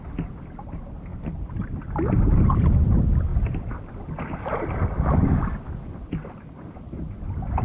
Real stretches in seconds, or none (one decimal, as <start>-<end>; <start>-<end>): 0.0-3.3; 6.1-7.6